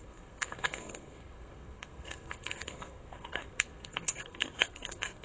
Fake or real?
fake